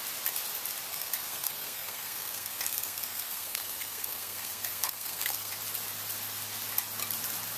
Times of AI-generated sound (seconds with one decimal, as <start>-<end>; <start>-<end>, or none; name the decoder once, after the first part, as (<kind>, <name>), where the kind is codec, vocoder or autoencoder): 0.9-5.5 (codec, SNAC)